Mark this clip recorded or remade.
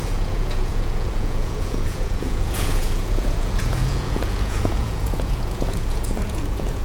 remade